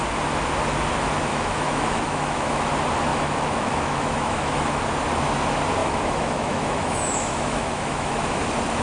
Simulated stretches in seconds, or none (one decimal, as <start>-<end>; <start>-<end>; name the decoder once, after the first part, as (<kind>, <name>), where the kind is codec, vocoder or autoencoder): 1.3-2.7 (autoencoder, DAC-VAE); 3.1-4.8; 5.8-8.4